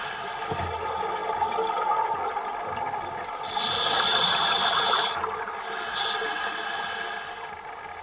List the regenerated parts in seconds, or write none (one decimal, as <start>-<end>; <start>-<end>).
none